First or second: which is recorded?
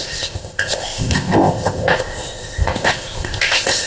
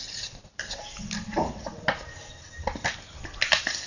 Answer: second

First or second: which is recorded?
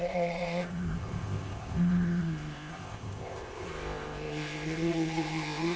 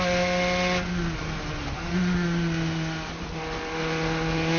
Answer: second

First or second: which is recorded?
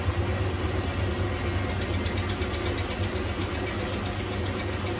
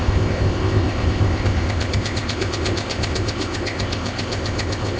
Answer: first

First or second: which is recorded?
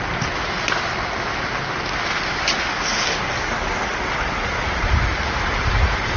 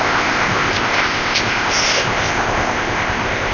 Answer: first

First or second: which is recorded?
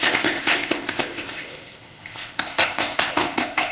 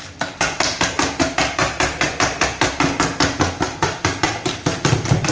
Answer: second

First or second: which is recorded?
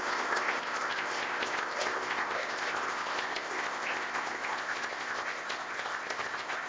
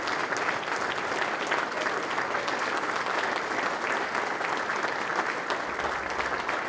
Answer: second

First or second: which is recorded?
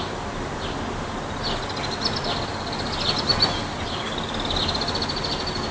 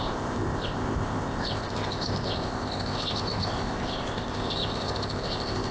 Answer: first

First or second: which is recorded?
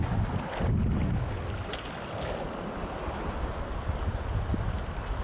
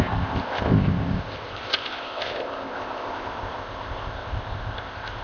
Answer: first